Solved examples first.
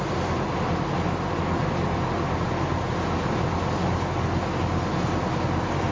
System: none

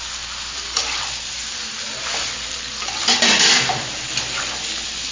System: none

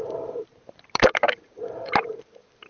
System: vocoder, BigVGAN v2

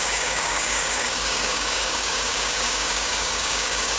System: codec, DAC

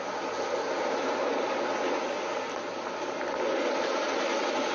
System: none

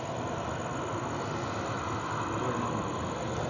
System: none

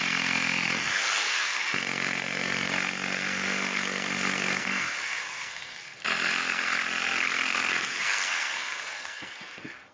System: codec, SNAC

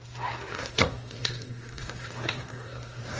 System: codec, SNAC